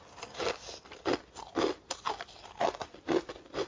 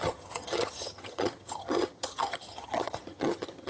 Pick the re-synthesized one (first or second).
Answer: second